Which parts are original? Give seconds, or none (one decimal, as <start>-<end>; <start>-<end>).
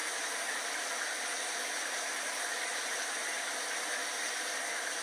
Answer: 0.0-5.0